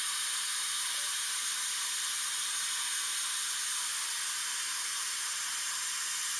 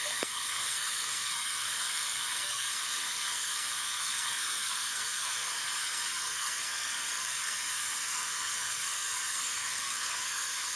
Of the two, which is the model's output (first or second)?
second